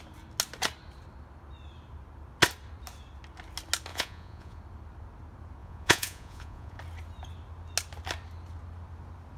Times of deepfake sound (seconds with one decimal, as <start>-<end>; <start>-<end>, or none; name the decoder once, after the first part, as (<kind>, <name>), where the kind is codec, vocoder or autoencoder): 3.9-4.6 (vocoder, Vocos); 5.6-6.8